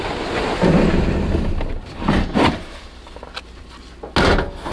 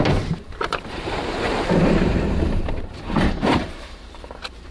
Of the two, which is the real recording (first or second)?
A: first